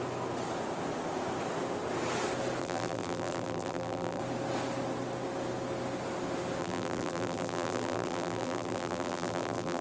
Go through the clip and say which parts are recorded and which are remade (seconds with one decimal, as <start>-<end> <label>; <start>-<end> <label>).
0.0-2.6 recorded; 2.6-4.2 remade; 4.2-6.6 recorded; 6.6-9.8 remade